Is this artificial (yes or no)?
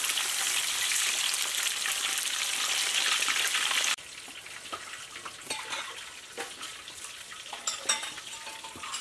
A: no